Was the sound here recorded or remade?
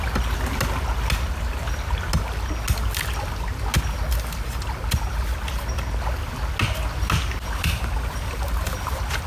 recorded